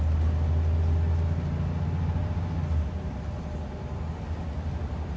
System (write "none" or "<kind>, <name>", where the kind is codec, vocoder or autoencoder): none